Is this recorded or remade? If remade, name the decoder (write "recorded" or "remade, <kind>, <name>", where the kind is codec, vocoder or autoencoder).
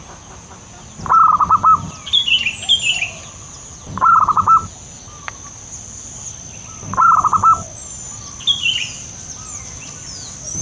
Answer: recorded